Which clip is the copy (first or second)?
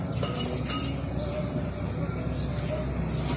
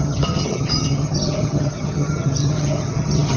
second